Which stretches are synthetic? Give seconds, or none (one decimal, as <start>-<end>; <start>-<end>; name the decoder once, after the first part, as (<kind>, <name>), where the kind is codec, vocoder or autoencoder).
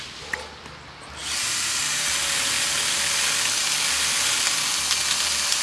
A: none